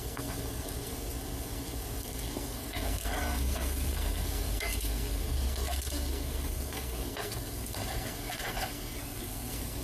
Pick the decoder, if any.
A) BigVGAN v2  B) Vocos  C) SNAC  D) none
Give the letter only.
C